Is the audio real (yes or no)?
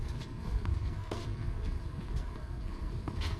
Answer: no